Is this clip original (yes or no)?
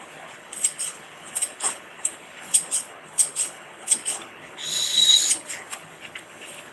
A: no